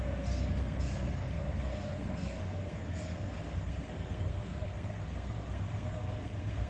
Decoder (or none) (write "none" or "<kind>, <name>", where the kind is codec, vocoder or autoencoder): codec, SNAC